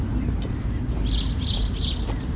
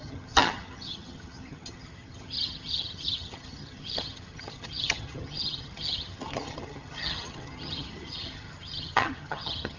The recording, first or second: first